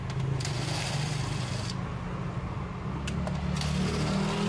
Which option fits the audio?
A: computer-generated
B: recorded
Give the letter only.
B